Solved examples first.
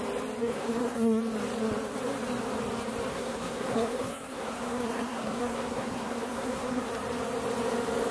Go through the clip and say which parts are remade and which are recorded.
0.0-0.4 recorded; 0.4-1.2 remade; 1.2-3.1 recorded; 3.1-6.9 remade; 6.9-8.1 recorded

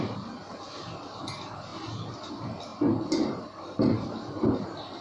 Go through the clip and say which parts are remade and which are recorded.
0.0-5.0 recorded